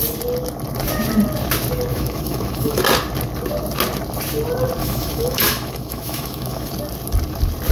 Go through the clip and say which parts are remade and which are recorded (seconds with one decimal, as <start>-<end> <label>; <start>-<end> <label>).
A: 0.0-1.9 recorded; 1.9-2.8 remade; 2.8-4.8 recorded; 4.8-6.7 remade; 6.7-7.7 recorded